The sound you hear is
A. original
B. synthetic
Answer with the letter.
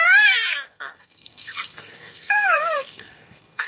B